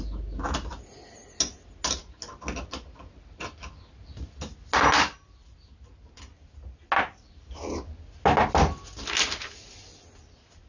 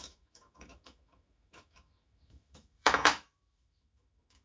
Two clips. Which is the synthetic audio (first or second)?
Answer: second